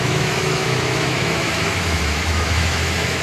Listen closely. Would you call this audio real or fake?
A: fake